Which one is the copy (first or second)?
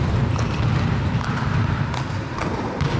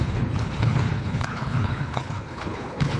second